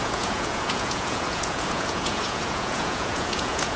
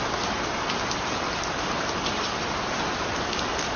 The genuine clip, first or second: second